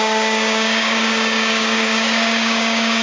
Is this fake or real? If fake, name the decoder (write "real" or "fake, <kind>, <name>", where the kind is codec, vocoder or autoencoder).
fake, codec, DAC